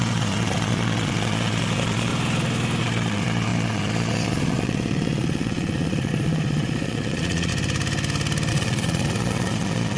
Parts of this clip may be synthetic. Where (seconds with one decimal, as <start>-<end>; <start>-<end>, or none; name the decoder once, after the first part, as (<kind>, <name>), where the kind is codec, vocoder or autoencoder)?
0.0-2.1 (vocoder, Vocos); 2.8-7.5; 8.5-10.0